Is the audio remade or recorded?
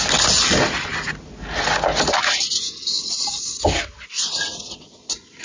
recorded